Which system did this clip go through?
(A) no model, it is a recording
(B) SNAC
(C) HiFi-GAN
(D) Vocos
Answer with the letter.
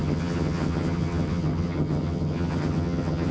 C